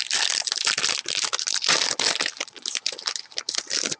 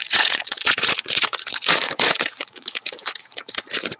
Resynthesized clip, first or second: second